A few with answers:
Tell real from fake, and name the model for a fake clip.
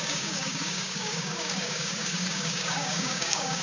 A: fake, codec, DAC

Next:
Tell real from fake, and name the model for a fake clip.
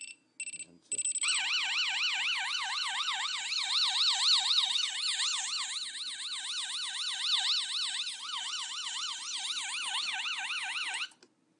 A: real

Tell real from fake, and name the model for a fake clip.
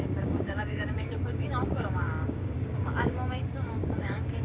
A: fake, codec, DAC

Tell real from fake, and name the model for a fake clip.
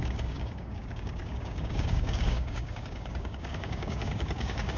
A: fake, codec, DAC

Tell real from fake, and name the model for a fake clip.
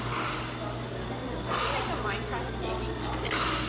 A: real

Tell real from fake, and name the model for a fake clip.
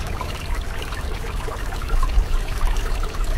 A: fake, codec, DAC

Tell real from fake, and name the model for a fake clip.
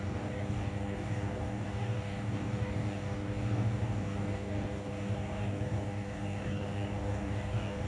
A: fake, codec, DAC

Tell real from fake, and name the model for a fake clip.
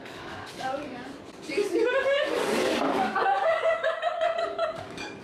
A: fake, codec, DAC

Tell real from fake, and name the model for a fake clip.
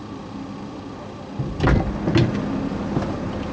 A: real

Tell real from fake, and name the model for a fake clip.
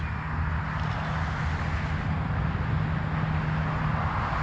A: real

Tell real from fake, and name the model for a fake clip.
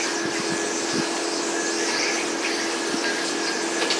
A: real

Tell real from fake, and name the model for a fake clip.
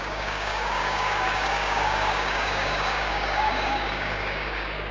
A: fake, codec, DAC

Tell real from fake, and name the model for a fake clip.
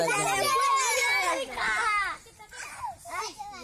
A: real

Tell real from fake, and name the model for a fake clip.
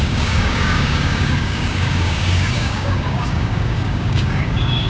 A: fake, codec, DAC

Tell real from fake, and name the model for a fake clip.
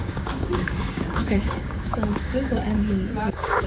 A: fake, codec, DAC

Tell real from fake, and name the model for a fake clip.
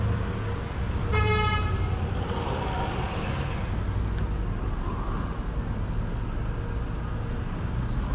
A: real